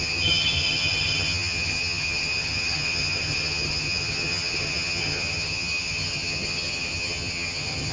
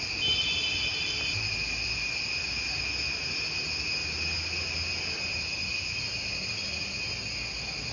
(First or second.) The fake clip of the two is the first